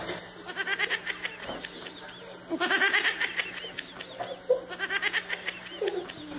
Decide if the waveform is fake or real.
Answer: real